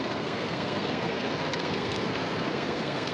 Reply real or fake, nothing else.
fake